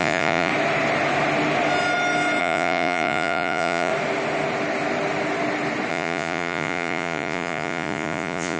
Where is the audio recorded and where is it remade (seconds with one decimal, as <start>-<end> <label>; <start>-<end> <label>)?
0.0-0.5 remade; 0.5-2.4 recorded; 2.4-3.9 remade; 3.9-5.9 recorded; 5.9-8.6 remade